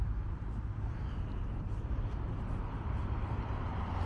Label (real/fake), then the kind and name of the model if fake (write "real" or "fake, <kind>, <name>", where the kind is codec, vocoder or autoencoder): fake, vocoder, BigVGAN v2